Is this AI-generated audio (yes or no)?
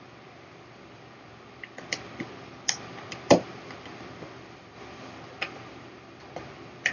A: yes